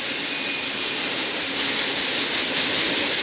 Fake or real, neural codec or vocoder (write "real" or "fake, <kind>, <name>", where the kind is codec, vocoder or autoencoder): real